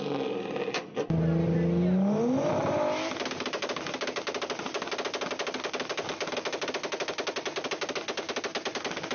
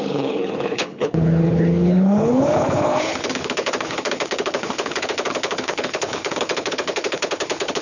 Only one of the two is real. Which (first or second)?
first